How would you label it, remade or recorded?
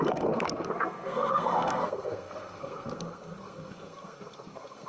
remade